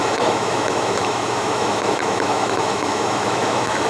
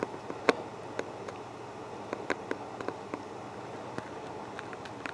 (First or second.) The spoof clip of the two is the first